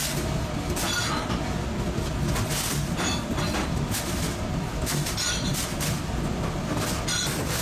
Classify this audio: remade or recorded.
recorded